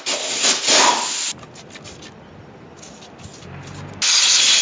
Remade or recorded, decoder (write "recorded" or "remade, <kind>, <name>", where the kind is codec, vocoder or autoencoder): recorded